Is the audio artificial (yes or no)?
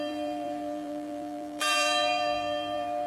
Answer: yes